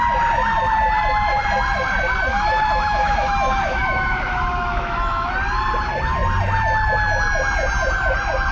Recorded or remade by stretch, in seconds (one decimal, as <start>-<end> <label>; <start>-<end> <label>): 0.0-2.3 recorded; 2.3-5.3 remade; 5.3-8.5 recorded

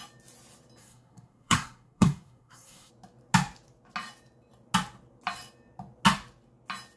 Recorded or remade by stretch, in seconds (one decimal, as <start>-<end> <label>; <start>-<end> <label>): 0.0-0.8 recorded; 0.8-2.9 remade; 2.9-7.0 recorded

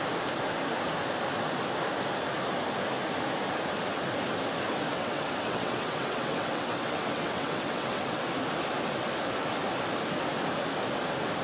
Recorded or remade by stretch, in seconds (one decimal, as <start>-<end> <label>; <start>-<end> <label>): 0.0-4.9 recorded; 4.9-8.2 remade; 8.2-11.4 recorded

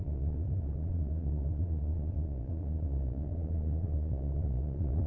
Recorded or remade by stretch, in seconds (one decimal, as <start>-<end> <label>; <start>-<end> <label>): 0.0-5.1 remade